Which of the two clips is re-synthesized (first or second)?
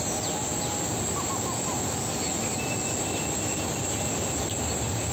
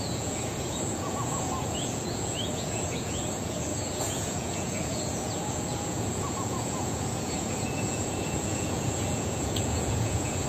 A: second